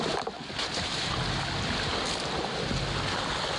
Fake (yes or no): no